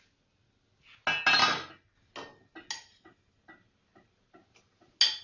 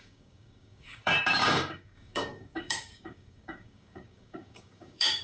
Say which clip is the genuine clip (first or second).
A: first